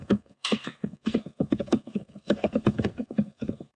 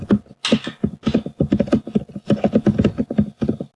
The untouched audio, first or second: second